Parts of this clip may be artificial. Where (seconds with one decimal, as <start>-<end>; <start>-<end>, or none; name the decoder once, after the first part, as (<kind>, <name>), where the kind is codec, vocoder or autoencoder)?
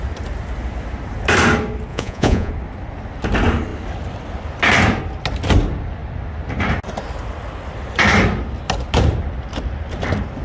1.9-2.5 (vocoder, Vocos)